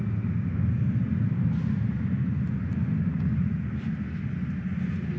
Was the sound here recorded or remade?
recorded